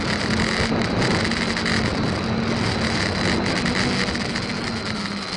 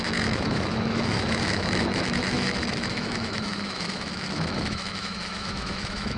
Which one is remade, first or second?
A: second